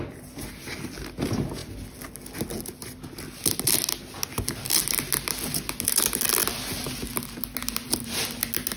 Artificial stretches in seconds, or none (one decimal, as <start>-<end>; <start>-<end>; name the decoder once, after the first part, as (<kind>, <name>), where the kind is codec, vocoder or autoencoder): none